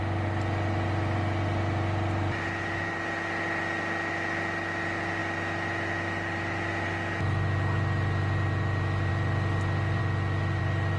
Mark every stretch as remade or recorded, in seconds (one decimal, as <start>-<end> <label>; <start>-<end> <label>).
0.0-11.0 recorded